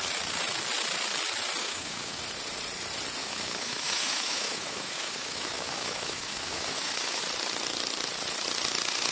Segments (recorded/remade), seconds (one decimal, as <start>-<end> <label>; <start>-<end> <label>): 0.0-1.6 recorded; 1.6-2.2 remade; 2.2-3.2 recorded; 3.2-7.2 remade; 7.2-9.1 recorded